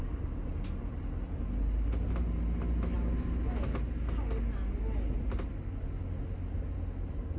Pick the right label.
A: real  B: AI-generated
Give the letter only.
A